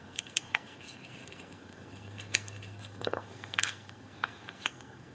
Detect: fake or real fake